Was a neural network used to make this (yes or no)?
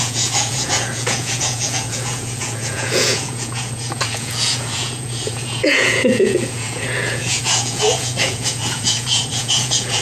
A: yes